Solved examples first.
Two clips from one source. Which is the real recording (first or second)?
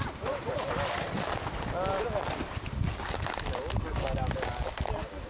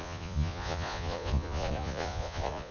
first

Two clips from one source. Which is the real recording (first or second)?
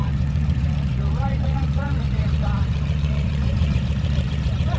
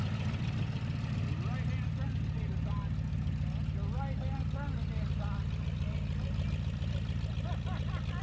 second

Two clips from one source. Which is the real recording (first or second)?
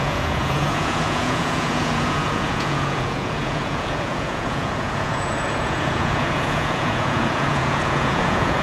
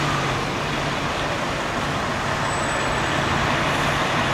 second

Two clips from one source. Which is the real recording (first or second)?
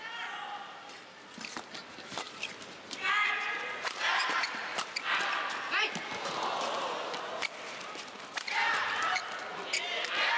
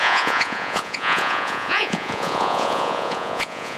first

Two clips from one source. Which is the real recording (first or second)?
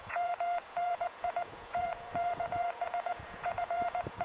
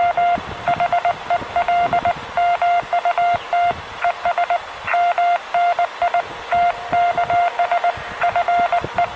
second